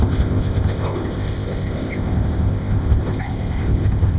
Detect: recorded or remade remade